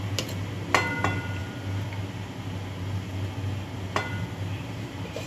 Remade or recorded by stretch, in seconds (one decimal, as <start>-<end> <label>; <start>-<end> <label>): 0.0-5.3 recorded